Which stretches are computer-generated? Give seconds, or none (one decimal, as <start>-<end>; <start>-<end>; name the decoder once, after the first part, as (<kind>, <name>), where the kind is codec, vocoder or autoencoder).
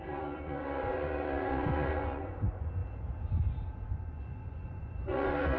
0.0-2.8 (vocoder, Vocos); 3.9-5.6